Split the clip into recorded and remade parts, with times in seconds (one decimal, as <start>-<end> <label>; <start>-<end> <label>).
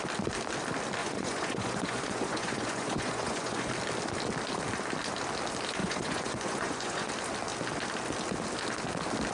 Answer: 0.0-1.0 recorded; 1.0-3.7 remade; 3.7-5.8 recorded; 5.8-7.1 remade; 7.1-9.3 recorded